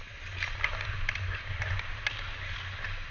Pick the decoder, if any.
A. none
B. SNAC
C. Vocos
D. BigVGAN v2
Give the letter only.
A